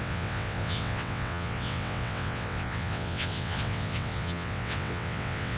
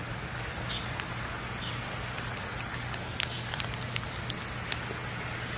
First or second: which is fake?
first